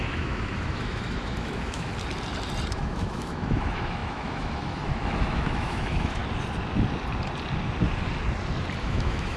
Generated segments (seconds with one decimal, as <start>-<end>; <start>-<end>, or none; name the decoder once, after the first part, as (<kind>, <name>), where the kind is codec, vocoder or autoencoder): 0.0-1.9 (autoencoder, DAC-VAE); 2.7-6.2; 8.8-9.4